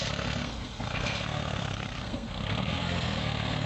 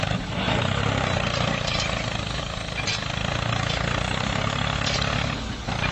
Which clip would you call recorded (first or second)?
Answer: second